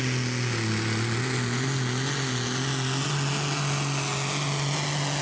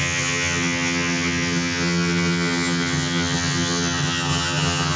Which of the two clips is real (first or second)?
first